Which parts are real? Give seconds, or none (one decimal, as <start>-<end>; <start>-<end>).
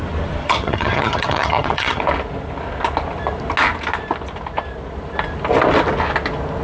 0.0-0.4; 2.0-6.6